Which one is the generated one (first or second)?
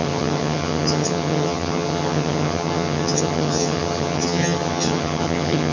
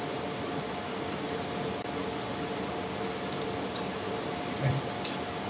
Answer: first